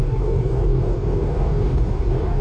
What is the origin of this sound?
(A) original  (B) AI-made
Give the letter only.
B